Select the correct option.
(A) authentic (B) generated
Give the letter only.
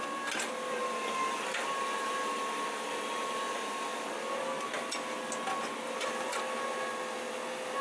A